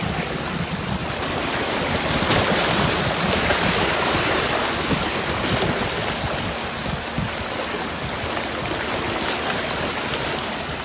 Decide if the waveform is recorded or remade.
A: recorded